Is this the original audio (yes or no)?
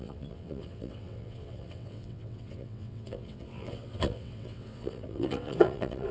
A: no